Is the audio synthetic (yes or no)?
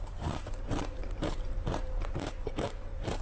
yes